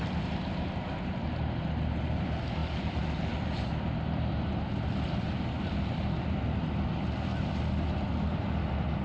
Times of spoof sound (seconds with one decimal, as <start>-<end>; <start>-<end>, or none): none